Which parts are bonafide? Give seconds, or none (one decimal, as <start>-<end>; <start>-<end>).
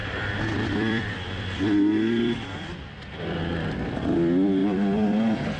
3.4-4.6